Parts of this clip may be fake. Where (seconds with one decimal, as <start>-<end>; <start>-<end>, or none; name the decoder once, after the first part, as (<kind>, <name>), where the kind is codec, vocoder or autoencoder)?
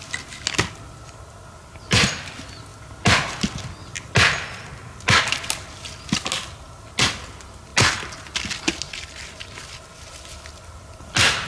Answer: none